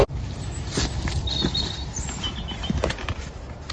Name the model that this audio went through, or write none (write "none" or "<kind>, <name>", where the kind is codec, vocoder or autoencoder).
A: none